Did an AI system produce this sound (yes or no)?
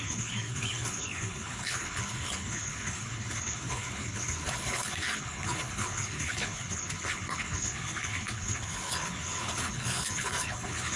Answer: yes